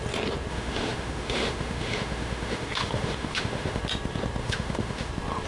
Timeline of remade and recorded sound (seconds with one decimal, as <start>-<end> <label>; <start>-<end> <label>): 0.0-0.5 recorded; 0.5-3.8 remade; 3.8-4.4 recorded; 4.4-5.1 remade; 5.1-5.5 recorded